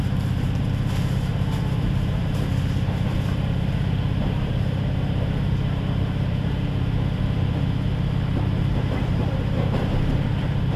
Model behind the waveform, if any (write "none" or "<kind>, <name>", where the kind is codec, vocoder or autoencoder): vocoder, BigVGAN v2